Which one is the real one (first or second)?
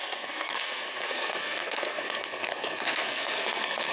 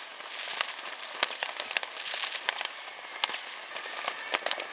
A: second